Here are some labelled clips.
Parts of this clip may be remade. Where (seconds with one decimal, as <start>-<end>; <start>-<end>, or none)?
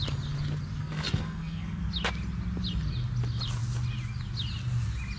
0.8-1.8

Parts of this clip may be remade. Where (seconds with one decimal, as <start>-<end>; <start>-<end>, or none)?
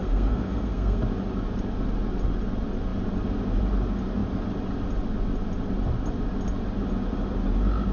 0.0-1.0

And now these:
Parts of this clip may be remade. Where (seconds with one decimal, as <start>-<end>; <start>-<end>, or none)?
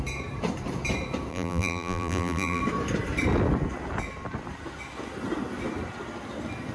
1.3-2.6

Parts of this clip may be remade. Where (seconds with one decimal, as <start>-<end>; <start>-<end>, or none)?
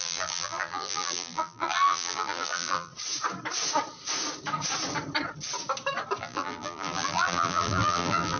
0.0-2.9; 6.2-8.4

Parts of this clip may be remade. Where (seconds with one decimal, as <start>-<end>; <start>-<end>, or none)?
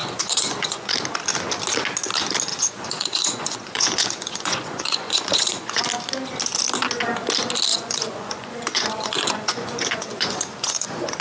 0.0-0.9; 2.5-5.8; 7.7-11.2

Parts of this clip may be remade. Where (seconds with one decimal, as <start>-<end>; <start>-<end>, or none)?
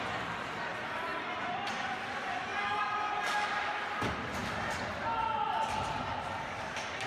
none